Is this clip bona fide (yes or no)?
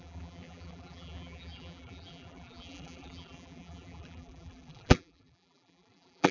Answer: no